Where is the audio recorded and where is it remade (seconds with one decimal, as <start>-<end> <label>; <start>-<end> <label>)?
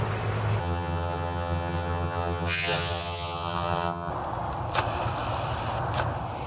0.0-0.6 recorded; 0.6-4.1 remade; 4.1-6.5 recorded